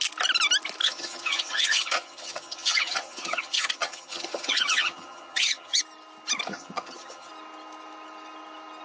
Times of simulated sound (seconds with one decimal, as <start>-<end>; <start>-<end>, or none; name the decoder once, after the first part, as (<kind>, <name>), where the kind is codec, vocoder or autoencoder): 0.8-5.8 (vocoder, HiFi-GAN); 6.5-7.3